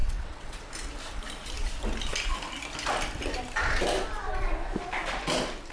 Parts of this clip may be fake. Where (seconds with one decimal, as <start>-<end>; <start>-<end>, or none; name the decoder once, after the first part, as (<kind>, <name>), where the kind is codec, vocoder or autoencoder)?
0.0-0.7 (vocoder, WaveNeXt)